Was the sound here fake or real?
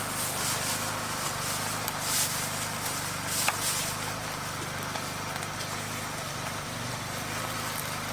real